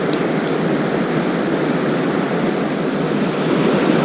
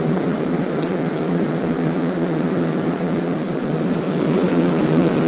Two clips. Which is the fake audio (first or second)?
second